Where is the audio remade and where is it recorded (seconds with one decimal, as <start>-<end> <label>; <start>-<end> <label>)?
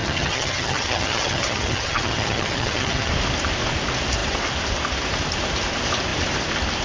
0.0-3.1 remade; 3.1-6.8 recorded